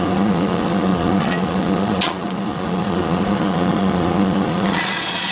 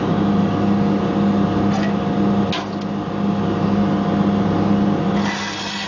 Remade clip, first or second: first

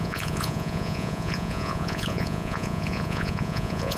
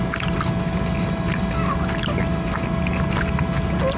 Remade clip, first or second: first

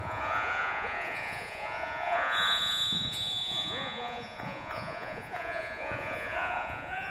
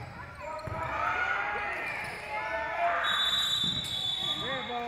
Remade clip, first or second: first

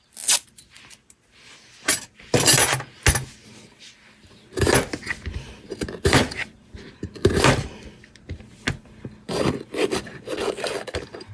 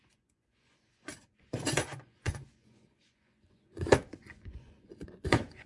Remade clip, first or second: second